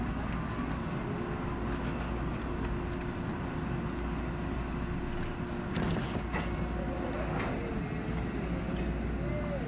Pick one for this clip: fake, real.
real